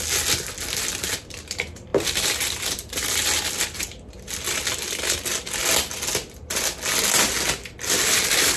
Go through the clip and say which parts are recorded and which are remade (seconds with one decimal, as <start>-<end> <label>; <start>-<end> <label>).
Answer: 0.0-8.6 recorded